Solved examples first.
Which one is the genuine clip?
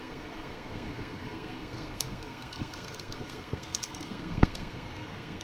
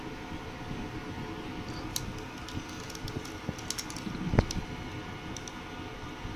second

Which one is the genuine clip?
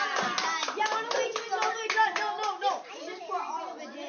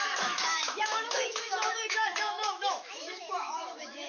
first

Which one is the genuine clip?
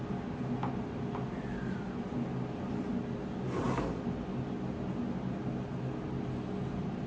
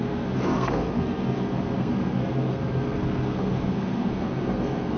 first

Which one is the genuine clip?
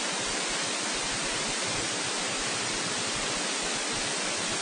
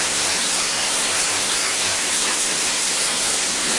first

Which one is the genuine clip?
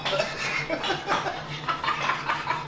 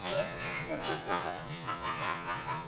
first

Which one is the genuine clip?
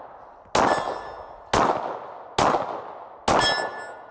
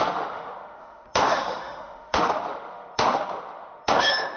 first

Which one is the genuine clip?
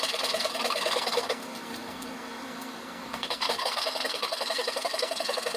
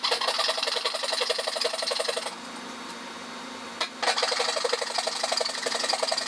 second